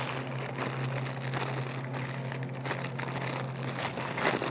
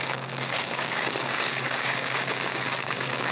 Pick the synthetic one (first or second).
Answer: second